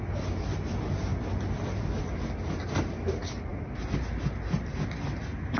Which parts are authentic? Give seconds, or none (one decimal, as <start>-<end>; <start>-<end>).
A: 0.0-5.6